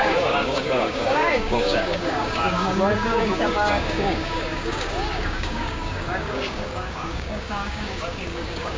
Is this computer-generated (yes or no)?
yes